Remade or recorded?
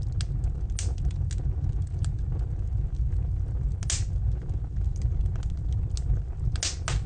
recorded